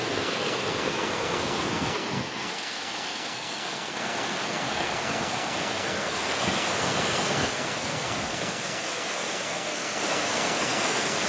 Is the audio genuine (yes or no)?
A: no